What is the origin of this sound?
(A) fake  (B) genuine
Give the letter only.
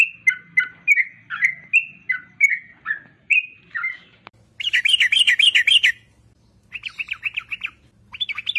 B